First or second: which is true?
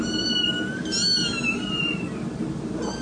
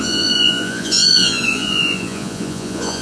first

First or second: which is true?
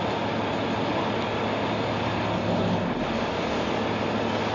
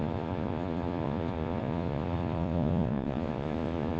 first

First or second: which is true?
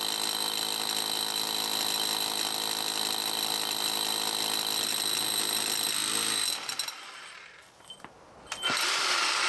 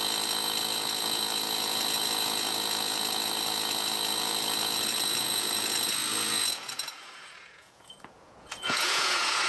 first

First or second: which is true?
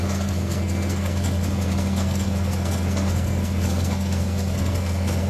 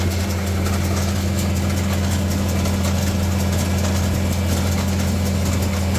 second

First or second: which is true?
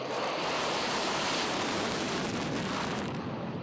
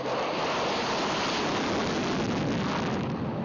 second